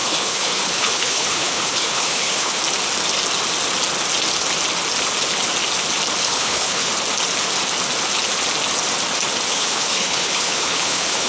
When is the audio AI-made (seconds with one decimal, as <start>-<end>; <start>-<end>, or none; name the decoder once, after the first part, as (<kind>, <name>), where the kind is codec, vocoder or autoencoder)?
0.0-2.6 (codec, HILCodec); 6.2-6.9; 9.5-11.3